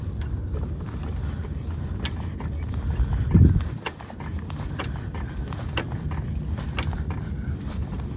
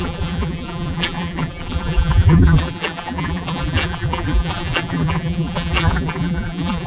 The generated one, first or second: second